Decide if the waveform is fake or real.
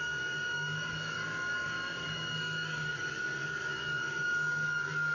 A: fake